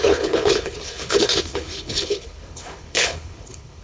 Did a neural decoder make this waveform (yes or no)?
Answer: yes